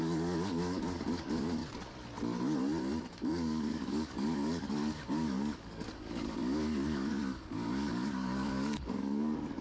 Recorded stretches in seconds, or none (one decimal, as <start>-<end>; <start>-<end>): 1.6-3.1